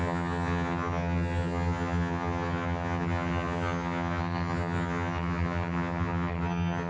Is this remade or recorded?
remade